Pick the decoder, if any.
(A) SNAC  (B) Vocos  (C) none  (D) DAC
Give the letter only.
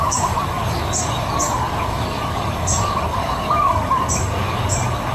D